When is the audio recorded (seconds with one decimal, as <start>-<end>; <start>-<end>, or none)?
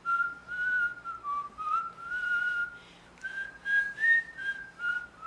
0.4-1.5; 2.7-3.8